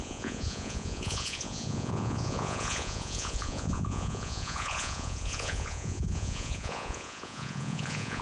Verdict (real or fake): fake